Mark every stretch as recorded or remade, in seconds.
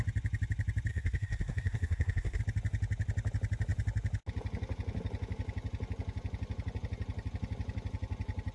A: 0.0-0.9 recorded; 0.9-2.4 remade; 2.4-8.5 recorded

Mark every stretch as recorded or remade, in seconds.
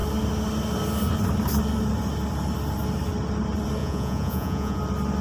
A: 0.0-3.8 recorded; 3.8-4.8 remade; 4.8-5.2 recorded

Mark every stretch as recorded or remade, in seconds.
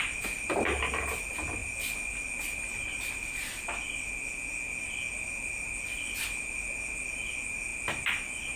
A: 0.0-8.6 recorded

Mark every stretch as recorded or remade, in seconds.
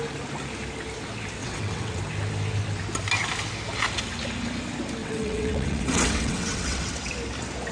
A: 0.0-1.4 recorded; 1.4-2.0 remade; 2.0-5.0 recorded; 5.0-7.1 remade; 7.1-7.7 recorded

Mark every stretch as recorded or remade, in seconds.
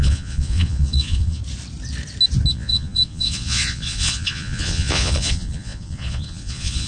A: 0.0-1.4 remade; 1.4-2.5 recorded; 2.5-6.9 remade